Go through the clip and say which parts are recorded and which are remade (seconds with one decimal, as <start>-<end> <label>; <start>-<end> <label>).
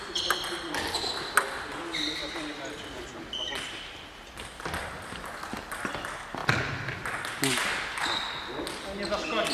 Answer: 0.0-9.5 recorded